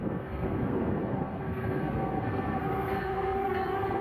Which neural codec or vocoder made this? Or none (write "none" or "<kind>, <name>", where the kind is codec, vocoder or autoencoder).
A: codec, SNAC